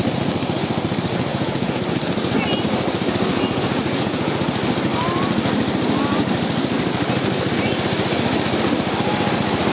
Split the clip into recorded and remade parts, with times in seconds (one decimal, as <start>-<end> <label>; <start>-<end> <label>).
0.0-1.3 recorded; 1.3-1.8 remade; 1.8-3.3 recorded; 3.3-4.4 remade; 4.4-9.7 recorded